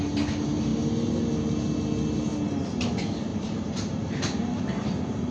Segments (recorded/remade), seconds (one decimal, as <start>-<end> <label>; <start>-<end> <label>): 0.0-3.3 recorded; 3.3-4.6 remade; 4.6-5.3 recorded